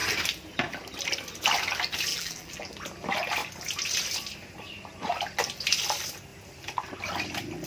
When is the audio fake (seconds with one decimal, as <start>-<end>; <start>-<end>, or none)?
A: 2.1-2.7